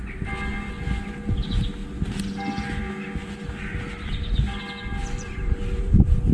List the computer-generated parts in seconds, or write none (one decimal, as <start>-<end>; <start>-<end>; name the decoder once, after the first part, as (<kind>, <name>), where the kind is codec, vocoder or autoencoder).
5.0-6.3 (vocoder, BigVGAN v2)